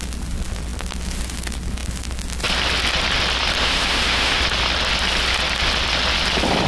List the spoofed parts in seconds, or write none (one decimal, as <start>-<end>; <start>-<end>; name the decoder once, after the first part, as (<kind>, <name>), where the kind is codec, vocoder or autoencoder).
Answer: 3.6-4.4 (autoencoder, DAC-VAE)